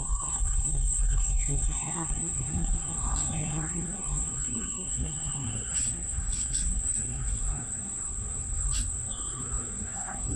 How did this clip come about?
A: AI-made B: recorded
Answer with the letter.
A